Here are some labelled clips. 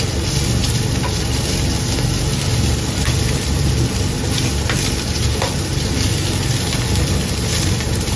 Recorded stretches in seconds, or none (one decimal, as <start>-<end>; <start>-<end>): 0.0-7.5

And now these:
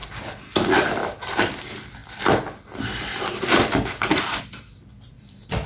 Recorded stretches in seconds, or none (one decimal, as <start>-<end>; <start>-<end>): 2.0-4.1

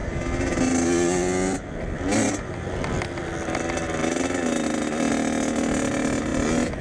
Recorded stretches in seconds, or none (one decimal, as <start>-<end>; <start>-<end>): 0.0-6.8